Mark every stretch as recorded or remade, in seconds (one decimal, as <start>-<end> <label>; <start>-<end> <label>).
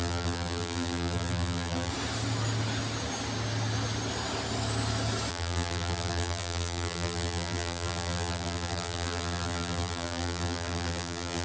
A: 0.0-1.9 remade; 1.9-5.3 recorded; 5.3-11.4 remade